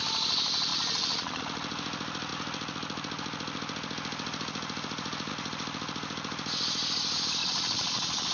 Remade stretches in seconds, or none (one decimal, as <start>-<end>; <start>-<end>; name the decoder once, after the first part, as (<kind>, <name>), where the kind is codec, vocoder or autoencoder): 0.7-1.4 (vocoder, Vocos); 7.4-8.3

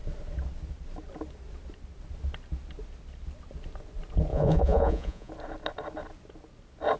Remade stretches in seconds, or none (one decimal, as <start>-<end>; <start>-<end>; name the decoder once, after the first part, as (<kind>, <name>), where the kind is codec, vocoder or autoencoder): 4.3-5.3 (vocoder, Vocos)

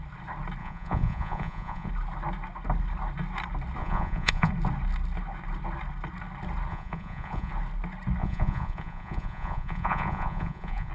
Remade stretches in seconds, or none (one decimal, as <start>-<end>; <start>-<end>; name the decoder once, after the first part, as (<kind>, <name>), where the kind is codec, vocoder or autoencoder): 0.6-1.9 (vocoder, Vocos); 3.8-4.5; 6.7-7.5; 8.2-10.9

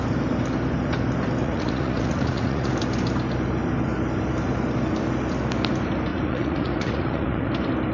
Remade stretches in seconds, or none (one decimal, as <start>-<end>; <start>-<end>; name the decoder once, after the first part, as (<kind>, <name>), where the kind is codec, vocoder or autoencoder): 1.4-2.7 (vocoder, Vocos); 6.1-7.5

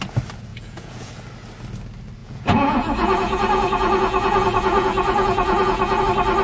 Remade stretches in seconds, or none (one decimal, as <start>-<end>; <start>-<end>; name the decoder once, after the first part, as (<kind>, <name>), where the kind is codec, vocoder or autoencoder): 0.5-1.1 (vocoder, Vocos); 2.2-6.0

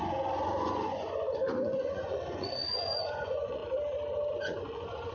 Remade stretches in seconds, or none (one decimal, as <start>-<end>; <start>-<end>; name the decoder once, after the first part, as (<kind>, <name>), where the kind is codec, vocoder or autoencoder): 0.0-3.6 (vocoder, Vocos); 4.3-5.1

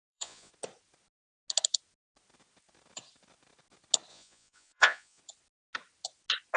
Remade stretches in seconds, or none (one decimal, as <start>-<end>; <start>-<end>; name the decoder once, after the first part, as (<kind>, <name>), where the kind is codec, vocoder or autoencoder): 0.0-0.5 (vocoder, Vocos); 4.1-5.2

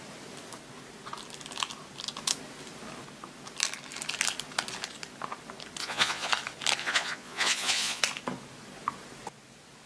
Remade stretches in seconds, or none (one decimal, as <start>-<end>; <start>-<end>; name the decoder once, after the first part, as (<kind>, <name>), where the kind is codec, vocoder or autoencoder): 5.8-6.3 (vocoder, Vocos); 6.8-8.0